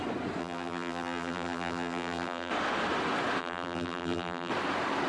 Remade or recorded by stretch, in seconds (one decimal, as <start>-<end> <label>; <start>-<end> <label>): 0.0-0.4 recorded; 0.4-2.5 remade; 2.5-3.4 recorded; 3.4-4.5 remade; 4.5-5.1 recorded